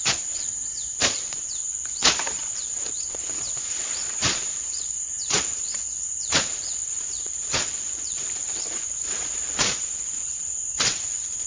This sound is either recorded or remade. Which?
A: remade